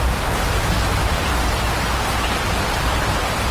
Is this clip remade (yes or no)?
no